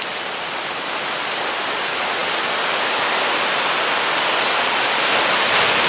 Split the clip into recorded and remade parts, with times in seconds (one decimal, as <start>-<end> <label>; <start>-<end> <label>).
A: 0.0-5.9 recorded